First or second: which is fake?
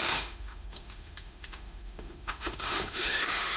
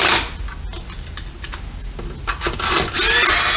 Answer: first